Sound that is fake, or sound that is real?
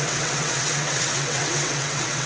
fake